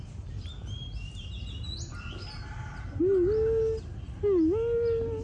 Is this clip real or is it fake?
real